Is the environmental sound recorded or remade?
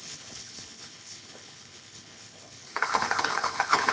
remade